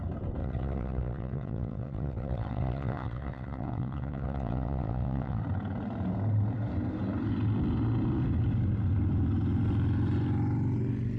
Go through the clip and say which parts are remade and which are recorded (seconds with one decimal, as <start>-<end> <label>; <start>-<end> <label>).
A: 0.0-0.4 recorded; 0.4-5.4 remade; 5.4-11.2 recorded